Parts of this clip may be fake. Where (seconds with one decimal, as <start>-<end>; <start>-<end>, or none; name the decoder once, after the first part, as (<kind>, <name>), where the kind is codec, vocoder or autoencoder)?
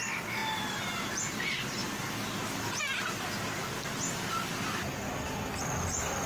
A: none